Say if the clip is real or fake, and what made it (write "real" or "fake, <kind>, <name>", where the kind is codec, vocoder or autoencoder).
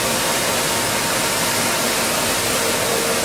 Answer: real